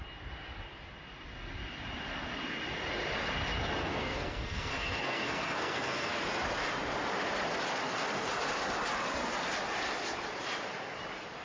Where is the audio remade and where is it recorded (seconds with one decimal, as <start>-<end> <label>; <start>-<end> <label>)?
0.0-3.8 recorded; 3.8-6.2 remade; 6.2-11.4 recorded